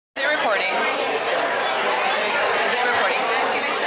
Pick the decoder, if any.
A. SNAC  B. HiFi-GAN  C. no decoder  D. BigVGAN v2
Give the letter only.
C